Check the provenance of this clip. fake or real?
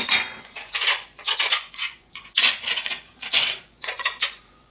fake